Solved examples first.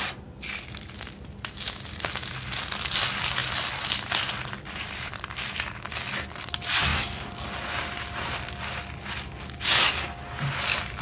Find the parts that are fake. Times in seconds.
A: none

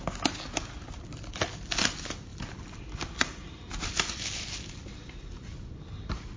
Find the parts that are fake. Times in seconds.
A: 2.3-6.4

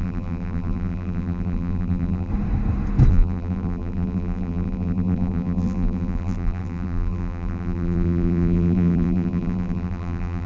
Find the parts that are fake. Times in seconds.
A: 0.0-2.3; 3.1-10.5

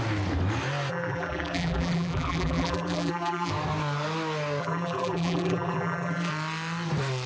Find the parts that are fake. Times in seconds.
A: 0.9-3.5; 4.6-6.3

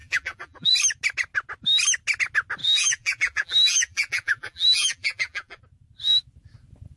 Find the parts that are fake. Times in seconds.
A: 0.0-0.7; 2.6-5.6

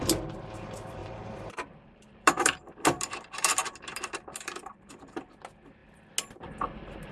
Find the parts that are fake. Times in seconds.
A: 1.0-5.2